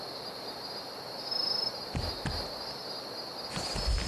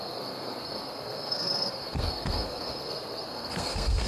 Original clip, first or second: first